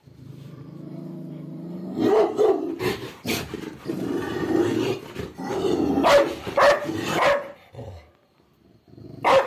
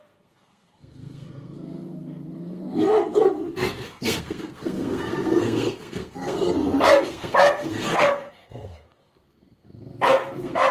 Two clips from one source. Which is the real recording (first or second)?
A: first